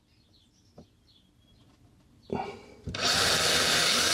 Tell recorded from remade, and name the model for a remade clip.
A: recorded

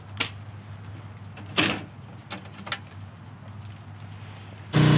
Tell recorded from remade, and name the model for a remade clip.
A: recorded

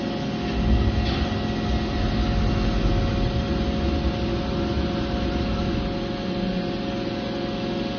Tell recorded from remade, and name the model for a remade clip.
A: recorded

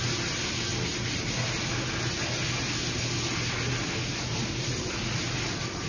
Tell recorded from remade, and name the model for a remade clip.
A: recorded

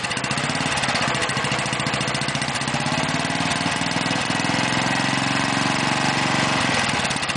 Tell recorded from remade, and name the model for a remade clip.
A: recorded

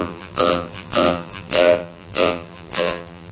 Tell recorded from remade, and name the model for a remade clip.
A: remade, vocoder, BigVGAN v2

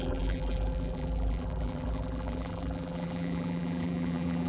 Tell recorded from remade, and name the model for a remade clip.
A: remade, vocoder, BigVGAN v2